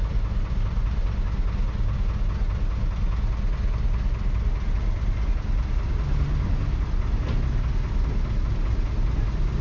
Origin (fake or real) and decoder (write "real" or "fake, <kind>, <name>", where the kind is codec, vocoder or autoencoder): real